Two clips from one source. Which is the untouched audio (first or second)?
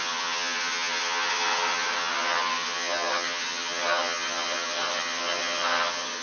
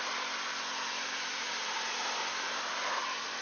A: second